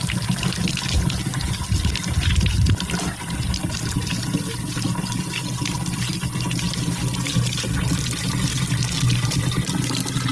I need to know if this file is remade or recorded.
recorded